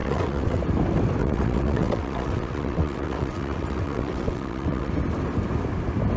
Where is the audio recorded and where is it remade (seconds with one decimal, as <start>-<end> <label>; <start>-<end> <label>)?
0.0-0.6 remade; 0.6-1.2 recorded; 1.2-4.9 remade; 4.9-6.2 recorded